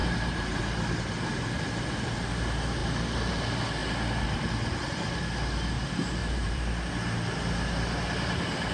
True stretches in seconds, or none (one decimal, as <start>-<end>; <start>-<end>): 0.6-6.2; 6.9-8.7